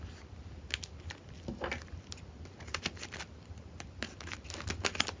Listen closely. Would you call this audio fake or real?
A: real